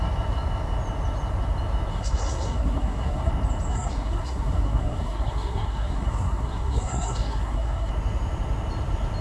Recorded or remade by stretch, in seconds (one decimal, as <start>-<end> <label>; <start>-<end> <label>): 0.0-1.9 recorded; 1.9-3.3 remade; 3.3-3.7 recorded; 3.7-7.9 remade; 7.9-9.2 recorded